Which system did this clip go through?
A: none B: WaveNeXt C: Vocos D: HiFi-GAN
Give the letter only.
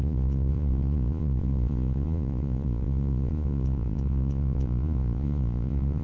C